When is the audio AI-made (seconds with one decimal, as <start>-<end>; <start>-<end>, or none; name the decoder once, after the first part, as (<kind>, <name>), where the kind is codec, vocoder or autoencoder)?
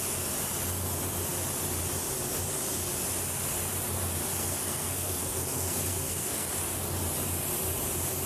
4.3-6.5 (codec, SNAC)